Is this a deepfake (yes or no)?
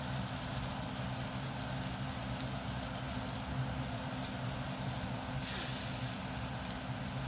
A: no